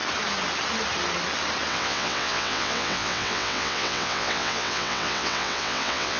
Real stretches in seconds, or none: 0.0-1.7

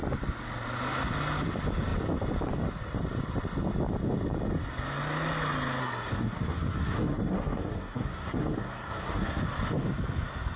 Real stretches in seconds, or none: 0.0-5.8; 9.4-10.6